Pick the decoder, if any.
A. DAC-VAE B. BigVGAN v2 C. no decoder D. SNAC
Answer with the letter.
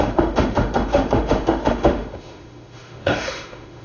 A